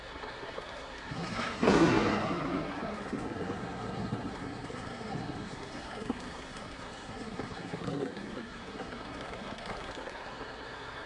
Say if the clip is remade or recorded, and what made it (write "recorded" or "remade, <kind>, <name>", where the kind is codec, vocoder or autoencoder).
remade, codec, SNAC